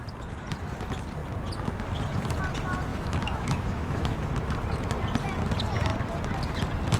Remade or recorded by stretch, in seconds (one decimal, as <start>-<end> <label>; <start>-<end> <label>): 0.0-2.9 recorded; 2.9-4.2 remade; 4.2-7.0 recorded